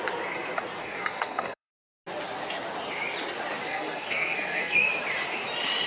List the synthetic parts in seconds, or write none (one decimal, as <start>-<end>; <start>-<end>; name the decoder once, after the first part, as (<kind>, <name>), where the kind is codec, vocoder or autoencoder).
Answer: 0.8-1.7 (codec, SNAC); 3.7-4.9